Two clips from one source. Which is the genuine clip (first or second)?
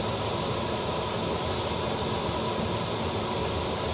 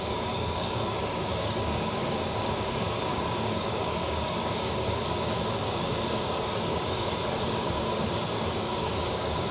first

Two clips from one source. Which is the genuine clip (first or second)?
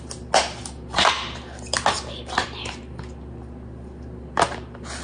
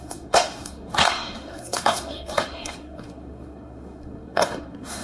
first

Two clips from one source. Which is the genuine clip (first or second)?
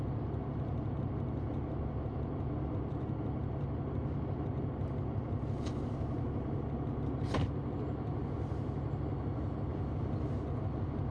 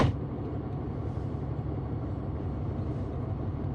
first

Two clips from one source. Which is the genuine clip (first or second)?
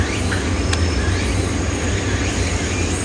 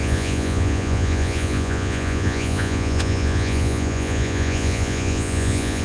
first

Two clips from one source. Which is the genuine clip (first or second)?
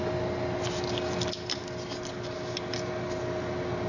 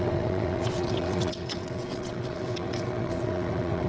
first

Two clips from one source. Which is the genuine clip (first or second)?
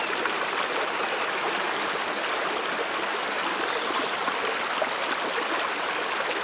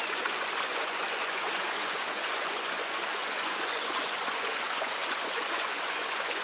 first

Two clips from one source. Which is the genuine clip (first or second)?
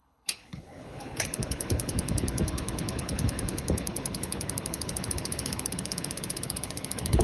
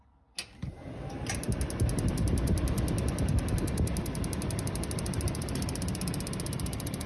second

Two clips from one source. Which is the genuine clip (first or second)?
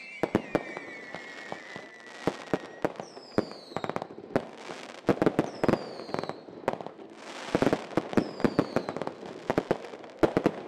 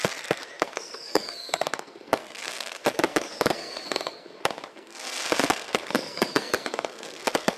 first